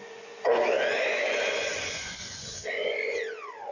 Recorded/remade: remade